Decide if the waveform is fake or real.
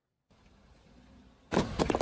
real